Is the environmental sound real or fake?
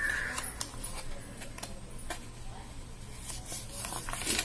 real